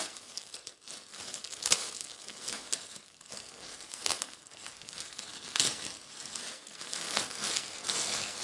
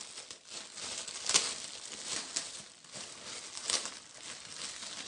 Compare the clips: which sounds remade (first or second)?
first